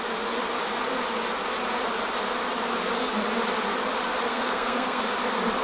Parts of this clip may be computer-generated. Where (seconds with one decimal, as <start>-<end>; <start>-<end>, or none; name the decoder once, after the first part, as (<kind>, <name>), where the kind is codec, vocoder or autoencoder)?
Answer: 4.3-5.0 (codec, SNAC)